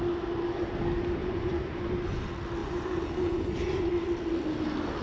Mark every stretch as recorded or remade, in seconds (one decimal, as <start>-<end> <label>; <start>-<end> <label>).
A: 0.0-1.2 recorded; 1.2-2.2 remade; 2.2-2.6 recorded; 2.6-3.9 remade; 3.9-5.0 recorded